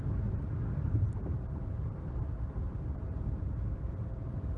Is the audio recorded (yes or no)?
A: yes